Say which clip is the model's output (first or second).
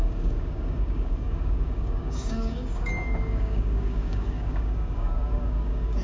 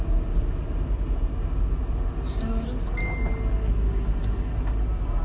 first